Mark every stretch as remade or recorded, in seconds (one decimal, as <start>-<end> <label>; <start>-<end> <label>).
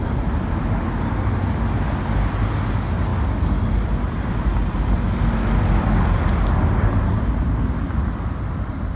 0.0-9.0 recorded